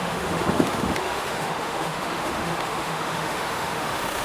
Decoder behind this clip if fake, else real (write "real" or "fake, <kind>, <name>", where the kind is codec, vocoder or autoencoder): fake, autoencoder, DAC-VAE